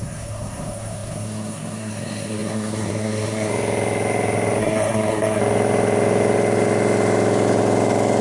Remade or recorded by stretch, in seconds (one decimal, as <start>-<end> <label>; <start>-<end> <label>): 0.0-3.5 remade; 3.5-4.6 recorded; 4.6-5.4 remade; 5.4-8.2 recorded